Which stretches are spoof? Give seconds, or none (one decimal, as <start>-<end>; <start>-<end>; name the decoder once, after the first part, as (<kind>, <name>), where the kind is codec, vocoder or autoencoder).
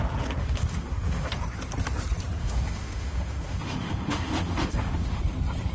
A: 0.4-1.3 (autoencoder, DAC-VAE); 2.4-5.2